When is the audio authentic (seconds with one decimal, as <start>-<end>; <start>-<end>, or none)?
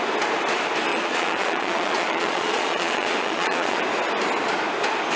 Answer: 0.0-0.9; 3.8-5.2